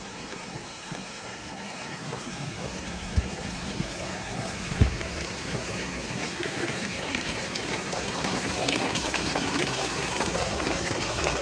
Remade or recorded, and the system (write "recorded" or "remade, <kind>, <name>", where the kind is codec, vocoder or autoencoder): remade, codec, SNAC